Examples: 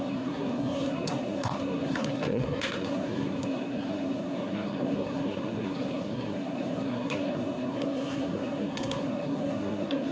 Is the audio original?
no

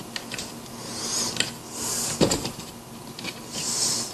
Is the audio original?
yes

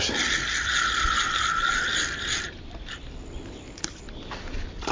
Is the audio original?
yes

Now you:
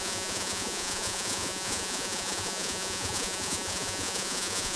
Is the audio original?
no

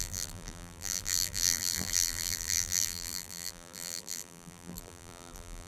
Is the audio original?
no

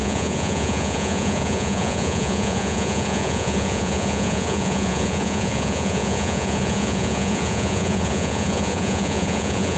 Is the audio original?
no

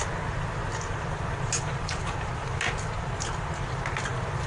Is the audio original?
yes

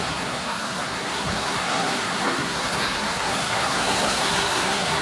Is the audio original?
no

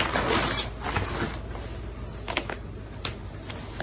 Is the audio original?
yes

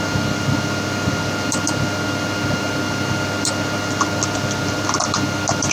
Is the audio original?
yes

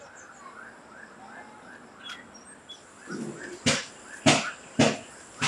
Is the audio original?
yes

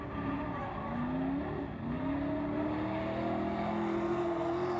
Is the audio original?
yes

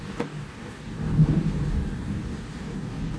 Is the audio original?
no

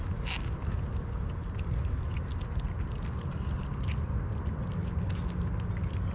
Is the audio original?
yes